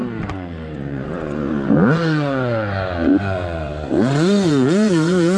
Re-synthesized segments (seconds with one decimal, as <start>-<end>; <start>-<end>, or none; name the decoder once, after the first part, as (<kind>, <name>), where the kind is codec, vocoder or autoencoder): 0.0-5.4 (vocoder, Vocos)